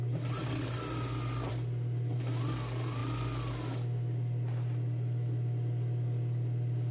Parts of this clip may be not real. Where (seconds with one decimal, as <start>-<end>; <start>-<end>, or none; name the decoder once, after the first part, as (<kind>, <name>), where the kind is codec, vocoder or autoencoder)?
none